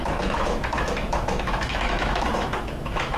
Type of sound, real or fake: fake